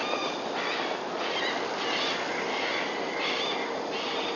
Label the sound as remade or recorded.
remade